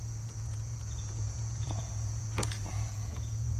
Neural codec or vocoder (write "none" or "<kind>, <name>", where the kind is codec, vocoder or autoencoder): vocoder, Vocos